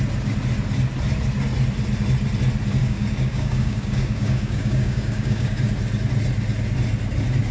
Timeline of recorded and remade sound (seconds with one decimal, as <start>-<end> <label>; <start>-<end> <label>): 0.0-2.8 recorded; 2.8-5.7 remade; 5.7-7.5 recorded